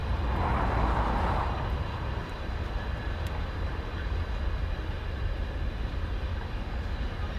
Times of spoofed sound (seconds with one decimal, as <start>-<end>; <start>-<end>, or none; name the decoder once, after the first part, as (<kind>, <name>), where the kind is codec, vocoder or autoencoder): 6.3-7.0 (codec, DAC)